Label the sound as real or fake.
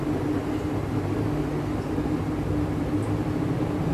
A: real